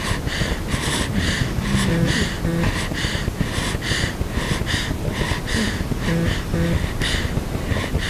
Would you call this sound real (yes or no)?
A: yes